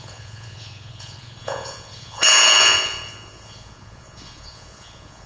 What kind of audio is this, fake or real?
fake